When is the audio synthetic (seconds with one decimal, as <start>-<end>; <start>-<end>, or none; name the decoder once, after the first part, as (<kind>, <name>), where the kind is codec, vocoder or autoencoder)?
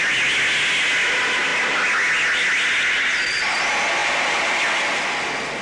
4.0-4.6 (vocoder, BigVGAN v2)